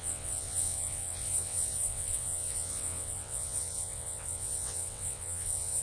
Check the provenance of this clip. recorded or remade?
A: remade